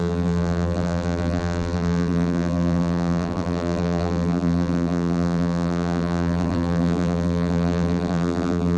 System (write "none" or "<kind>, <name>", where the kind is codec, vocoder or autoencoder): vocoder, BigVGAN v2